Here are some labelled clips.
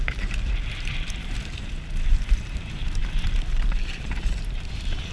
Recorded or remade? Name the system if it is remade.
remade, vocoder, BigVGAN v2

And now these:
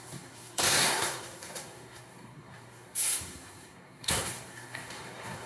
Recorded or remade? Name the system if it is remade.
remade, codec, SNAC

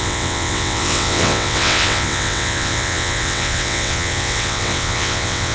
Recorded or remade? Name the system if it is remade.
remade, vocoder, WaveNeXt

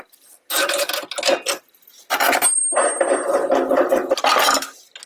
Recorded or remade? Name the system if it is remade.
recorded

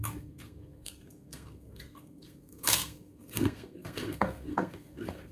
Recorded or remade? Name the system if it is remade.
remade, codec, SNAC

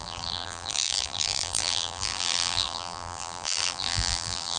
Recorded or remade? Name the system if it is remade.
remade, vocoder, BigVGAN v2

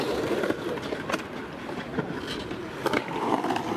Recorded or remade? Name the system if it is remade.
recorded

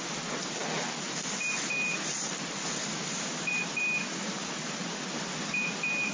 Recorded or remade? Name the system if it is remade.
recorded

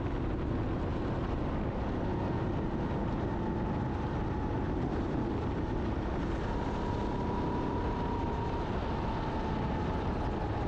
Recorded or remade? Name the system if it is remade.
recorded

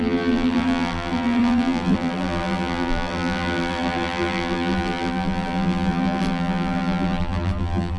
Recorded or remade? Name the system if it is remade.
remade, vocoder, BigVGAN v2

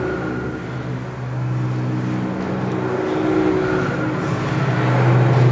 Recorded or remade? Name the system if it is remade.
recorded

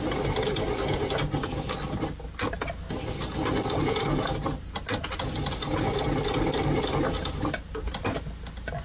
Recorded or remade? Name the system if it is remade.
recorded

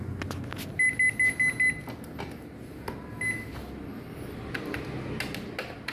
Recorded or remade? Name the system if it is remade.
recorded